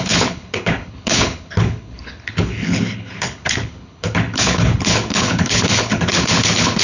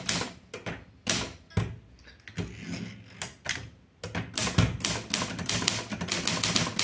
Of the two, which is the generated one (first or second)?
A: first